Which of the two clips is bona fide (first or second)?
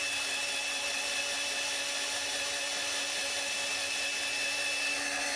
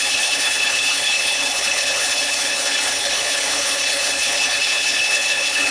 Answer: first